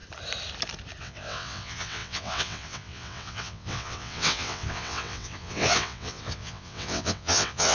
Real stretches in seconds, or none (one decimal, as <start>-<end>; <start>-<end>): 0.0-1.0